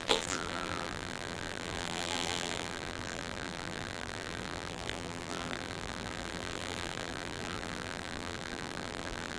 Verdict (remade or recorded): remade